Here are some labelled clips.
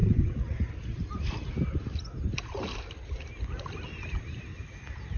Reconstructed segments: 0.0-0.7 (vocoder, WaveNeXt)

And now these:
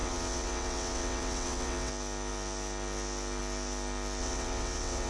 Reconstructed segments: 0.0-1.9 (vocoder, WaveNeXt); 4.2-5.1

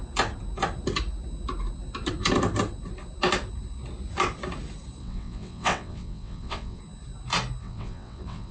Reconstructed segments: 5.0-6.8 (vocoder, WaveNeXt); 7.6-8.5